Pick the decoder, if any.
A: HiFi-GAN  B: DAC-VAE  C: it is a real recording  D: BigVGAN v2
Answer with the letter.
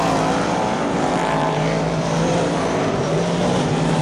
D